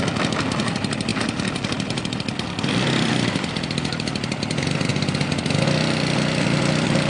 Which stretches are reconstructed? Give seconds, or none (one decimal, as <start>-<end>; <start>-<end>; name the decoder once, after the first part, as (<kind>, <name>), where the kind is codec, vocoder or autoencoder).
0.0-4.9 (vocoder, BigVGAN v2)